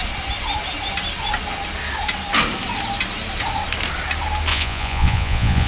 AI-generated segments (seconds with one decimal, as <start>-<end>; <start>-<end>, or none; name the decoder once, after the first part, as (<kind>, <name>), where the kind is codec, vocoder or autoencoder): 4.5-5.7 (vocoder, Vocos)